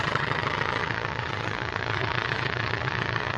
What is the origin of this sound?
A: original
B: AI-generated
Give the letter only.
B